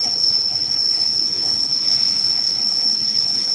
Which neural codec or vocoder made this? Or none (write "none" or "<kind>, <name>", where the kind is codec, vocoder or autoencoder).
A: codec, HILCodec